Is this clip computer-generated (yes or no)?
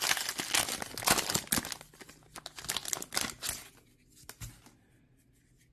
no